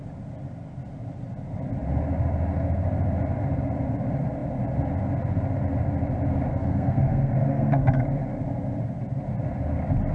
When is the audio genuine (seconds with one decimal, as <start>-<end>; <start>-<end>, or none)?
0.0-6.5; 8.0-10.1